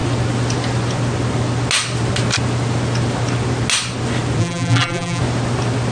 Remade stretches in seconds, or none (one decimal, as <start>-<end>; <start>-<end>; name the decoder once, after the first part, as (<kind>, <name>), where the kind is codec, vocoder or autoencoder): 4.4-5.2 (vocoder, BigVGAN v2)